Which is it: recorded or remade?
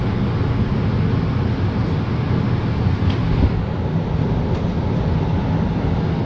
recorded